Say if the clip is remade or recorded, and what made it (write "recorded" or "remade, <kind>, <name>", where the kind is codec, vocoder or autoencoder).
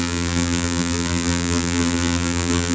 remade, vocoder, BigVGAN v2